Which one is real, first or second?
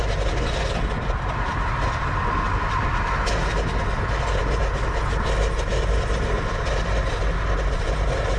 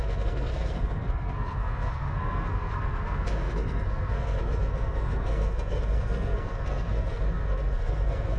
first